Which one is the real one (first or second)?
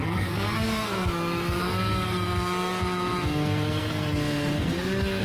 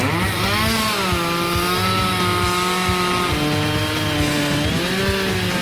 second